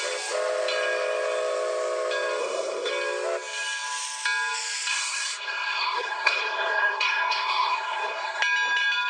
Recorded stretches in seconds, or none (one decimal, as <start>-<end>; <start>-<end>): 0.0-2.4; 2.9-4.9; 8.4-9.1